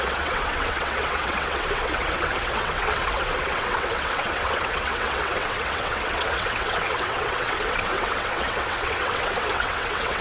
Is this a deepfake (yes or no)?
yes